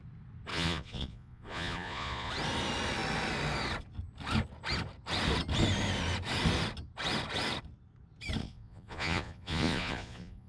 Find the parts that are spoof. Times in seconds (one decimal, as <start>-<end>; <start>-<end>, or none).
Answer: 0.5-2.3; 8.4-10.5

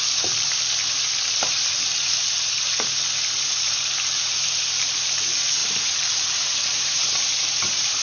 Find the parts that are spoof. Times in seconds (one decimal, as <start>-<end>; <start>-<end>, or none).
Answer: 5.6-7.3

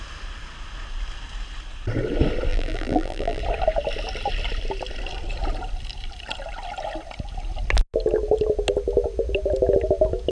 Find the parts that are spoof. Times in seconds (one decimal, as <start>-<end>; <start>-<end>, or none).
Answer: 2.5-3.4

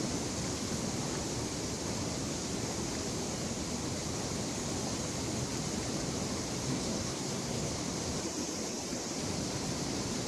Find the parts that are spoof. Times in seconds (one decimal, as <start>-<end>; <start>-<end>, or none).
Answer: 6.7-7.7

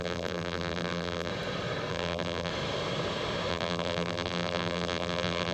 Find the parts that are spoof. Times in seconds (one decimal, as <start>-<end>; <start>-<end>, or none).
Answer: 0.0-1.3; 1.9-2.5; 3.5-5.5

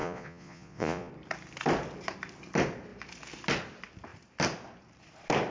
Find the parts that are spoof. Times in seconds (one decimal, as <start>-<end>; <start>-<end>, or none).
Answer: 0.0-1.1

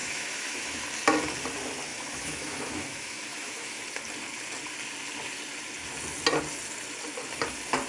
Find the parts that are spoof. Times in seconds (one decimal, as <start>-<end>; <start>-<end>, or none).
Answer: 0.0-0.8; 1.9-3.8

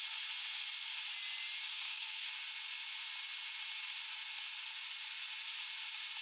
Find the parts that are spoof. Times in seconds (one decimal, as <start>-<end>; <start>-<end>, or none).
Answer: 1.7-2.3